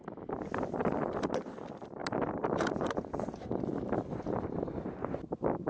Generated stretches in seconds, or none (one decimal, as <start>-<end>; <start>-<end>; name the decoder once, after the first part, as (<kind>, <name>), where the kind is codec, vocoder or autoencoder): none